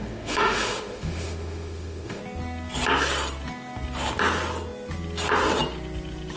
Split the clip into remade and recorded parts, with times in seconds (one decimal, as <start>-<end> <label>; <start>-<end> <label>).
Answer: 0.0-2.2 remade; 2.2-6.4 recorded